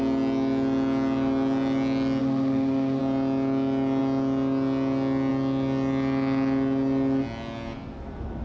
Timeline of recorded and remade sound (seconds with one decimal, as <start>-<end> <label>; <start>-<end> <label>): 0.0-2.2 recorded; 2.2-3.0 remade; 3.0-8.4 recorded